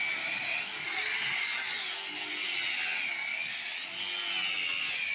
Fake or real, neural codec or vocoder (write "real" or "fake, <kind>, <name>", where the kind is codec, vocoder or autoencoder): real